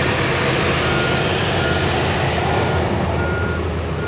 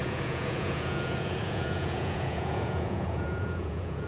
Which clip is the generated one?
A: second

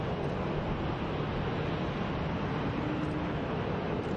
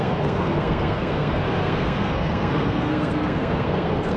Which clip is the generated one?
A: second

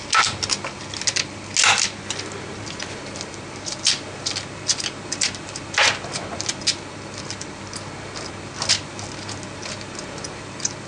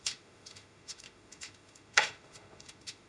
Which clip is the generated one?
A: second